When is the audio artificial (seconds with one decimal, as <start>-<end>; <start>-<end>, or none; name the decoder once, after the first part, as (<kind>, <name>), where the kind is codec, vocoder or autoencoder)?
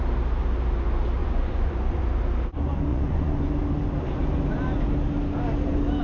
1.2-2.0 (vocoder, Vocos); 2.9-3.5